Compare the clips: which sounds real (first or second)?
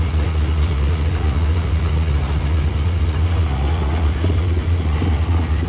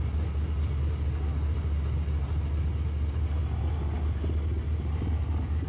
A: second